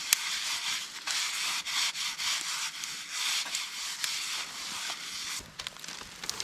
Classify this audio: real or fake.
real